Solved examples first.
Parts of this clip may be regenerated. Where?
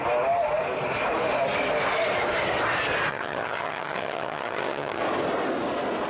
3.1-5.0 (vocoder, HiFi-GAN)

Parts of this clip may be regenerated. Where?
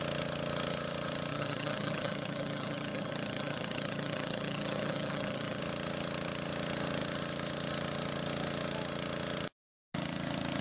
1.3-5.6 (vocoder, HiFi-GAN)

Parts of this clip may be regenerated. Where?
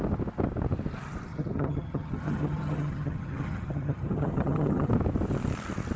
1.3-4.9 (vocoder, HiFi-GAN)